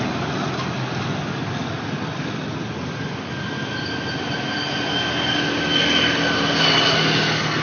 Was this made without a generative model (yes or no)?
yes